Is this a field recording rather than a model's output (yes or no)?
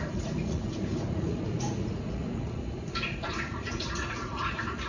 no